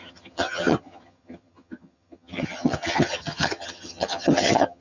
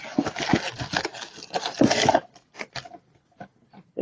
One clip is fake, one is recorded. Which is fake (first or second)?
first